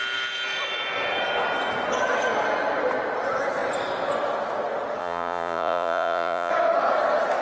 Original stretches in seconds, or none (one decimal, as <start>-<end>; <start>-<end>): 0.0-5.0; 6.5-7.4